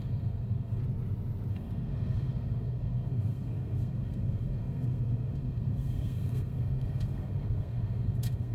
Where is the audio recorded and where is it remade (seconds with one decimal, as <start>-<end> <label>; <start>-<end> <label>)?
0.0-0.8 remade; 0.8-1.5 recorded; 1.5-8.5 remade